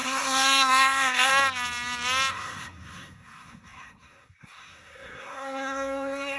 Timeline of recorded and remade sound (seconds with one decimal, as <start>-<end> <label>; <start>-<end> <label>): 0.0-1.3 remade; 1.3-2.3 recorded; 2.3-6.4 remade